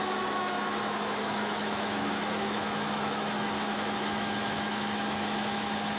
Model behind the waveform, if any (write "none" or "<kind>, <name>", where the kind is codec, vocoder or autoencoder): autoencoder, DAC-VAE